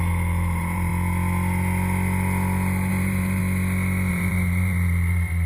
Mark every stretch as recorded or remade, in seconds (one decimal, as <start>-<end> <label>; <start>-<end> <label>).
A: 0.0-0.9 remade; 0.9-2.9 recorded; 2.9-3.4 remade; 3.4-4.1 recorded; 4.1-5.5 remade